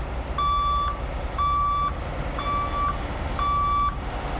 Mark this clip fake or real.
real